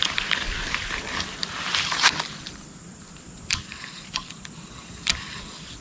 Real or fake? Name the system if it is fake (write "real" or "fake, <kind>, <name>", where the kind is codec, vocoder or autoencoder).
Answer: fake, vocoder, BigVGAN v2